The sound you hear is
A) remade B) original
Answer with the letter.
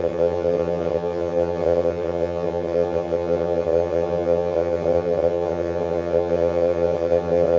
A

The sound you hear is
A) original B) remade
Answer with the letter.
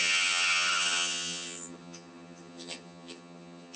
B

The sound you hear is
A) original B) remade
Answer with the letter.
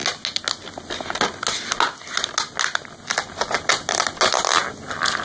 A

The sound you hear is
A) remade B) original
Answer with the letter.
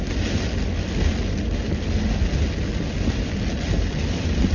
B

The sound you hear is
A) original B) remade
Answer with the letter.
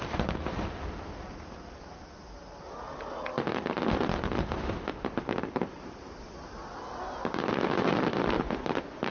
A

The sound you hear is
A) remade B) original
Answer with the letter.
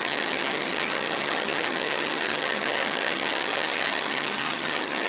A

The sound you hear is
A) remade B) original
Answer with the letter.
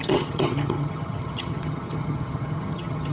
A